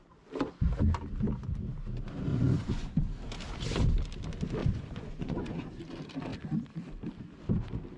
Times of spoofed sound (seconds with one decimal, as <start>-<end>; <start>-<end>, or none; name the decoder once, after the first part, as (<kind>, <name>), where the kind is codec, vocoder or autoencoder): 2.3-3.0 (vocoder, Vocos); 4.6-5.8